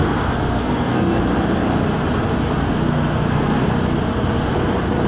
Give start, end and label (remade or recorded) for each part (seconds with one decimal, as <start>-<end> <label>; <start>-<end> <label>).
0.0-1.2 remade; 1.2-2.6 recorded; 2.6-3.7 remade; 3.7-5.1 recorded